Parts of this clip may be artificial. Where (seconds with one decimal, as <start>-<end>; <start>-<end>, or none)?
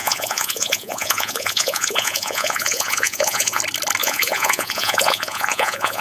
0.0-3.6; 4.0-6.0